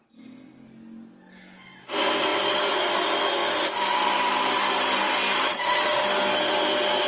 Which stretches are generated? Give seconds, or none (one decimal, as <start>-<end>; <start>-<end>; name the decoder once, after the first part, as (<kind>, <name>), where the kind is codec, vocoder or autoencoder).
5.5-6.0 (vocoder, Vocos)